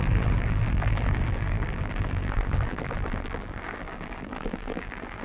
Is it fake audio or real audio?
fake